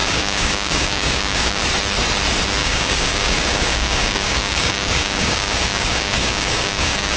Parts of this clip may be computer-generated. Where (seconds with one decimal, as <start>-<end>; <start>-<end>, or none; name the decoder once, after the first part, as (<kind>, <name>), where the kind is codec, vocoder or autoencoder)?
0.0-1.6 (codec, DAC); 2.6-7.2